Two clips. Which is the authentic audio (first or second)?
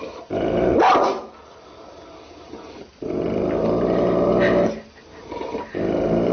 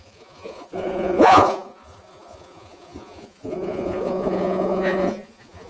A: first